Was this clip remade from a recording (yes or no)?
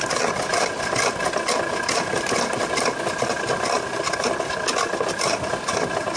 no